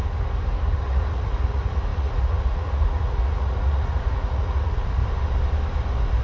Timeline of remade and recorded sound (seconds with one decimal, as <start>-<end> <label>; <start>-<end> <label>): 0.0-0.8 recorded; 0.8-5.0 remade; 5.0-6.2 recorded